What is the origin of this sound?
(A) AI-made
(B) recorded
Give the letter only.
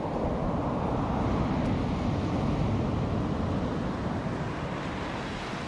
B